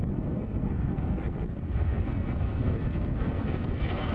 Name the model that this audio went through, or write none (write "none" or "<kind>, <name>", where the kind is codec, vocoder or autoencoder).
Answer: codec, SNAC